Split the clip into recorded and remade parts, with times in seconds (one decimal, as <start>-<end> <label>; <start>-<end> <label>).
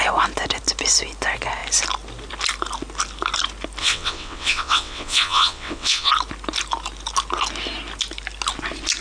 0.0-3.8 recorded; 3.8-6.1 remade; 6.1-9.0 recorded